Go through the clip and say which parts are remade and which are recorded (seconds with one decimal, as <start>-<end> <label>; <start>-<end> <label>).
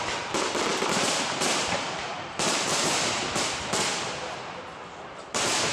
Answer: 0.0-5.7 remade